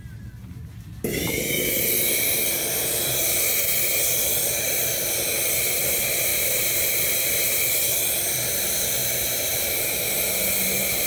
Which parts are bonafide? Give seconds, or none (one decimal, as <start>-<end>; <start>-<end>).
0.0-6.3; 6.9-9.0; 10.1-11.1